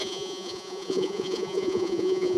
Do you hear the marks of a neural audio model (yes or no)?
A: yes